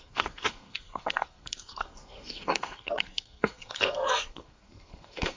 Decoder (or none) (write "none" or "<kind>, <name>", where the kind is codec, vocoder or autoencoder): codec, SNAC